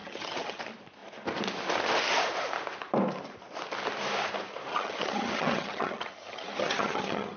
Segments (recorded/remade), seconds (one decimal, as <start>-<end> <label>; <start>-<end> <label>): 0.0-0.6 remade; 0.6-4.7 recorded; 4.7-7.4 remade